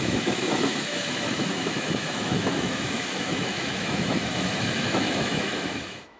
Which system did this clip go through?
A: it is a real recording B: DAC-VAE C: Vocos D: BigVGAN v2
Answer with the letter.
B